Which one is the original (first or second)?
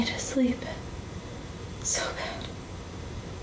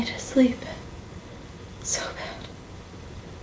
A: second